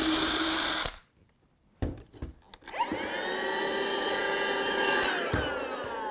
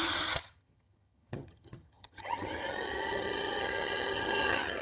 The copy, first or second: second